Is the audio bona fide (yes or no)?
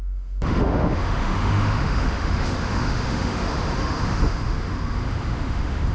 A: no